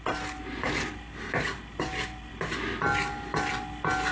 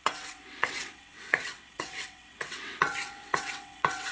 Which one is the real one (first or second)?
first